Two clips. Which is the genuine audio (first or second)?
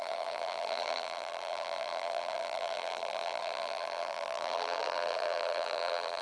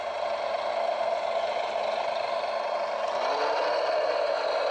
second